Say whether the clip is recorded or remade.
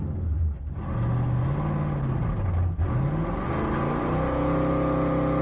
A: recorded